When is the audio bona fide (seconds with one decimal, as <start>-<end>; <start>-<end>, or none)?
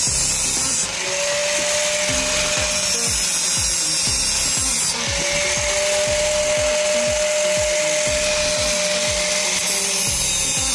0.0-10.7